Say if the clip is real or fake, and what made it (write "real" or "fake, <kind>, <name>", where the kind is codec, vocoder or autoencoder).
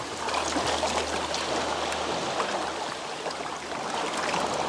real